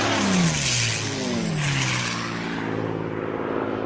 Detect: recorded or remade recorded